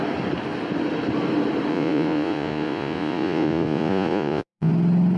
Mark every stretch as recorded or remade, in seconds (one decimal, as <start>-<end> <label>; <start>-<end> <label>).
0.0-1.7 recorded; 1.7-4.7 remade; 4.7-5.2 recorded